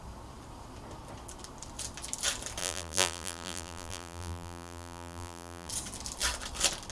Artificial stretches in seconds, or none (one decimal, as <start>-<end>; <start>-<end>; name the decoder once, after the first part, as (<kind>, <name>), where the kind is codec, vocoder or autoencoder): 2.6-5.7 (vocoder, BigVGAN v2)